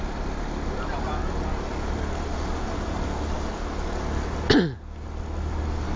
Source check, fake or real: real